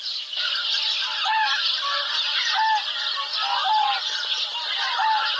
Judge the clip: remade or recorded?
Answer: recorded